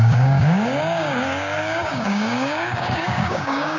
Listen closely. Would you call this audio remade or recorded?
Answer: remade